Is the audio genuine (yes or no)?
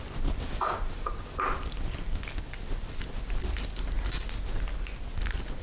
yes